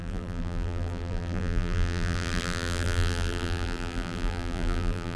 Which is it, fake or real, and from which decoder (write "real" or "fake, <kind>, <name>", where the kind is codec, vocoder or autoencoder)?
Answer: fake, vocoder, BigVGAN v2